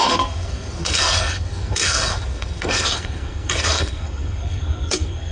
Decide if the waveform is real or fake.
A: fake